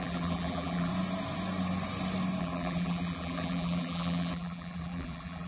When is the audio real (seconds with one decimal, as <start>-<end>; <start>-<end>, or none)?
0.9-2.4